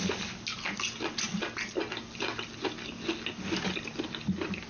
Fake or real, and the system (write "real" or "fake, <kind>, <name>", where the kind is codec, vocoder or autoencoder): real